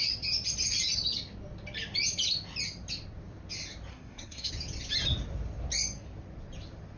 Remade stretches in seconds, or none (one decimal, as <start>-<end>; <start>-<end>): 3.9-4.5